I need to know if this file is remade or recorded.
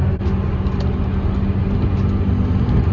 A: recorded